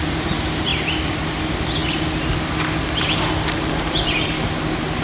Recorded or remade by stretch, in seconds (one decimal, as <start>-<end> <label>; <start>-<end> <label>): 0.0-5.0 recorded